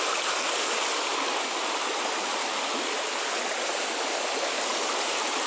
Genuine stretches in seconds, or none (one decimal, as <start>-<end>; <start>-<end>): 0.0-5.5